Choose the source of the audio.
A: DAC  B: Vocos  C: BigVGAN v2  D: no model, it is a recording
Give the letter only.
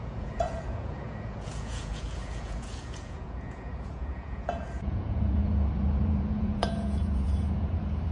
B